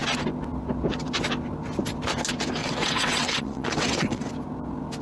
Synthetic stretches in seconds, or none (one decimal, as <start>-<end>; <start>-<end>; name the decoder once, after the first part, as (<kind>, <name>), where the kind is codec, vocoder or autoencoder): 2.6-4.3 (vocoder, WaveNeXt)